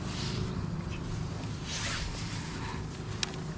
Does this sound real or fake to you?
real